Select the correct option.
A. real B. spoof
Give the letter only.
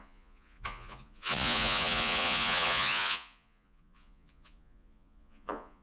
B